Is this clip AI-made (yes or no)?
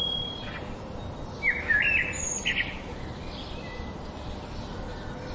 no